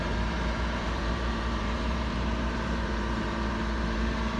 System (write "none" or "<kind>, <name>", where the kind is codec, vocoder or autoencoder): vocoder, BigVGAN v2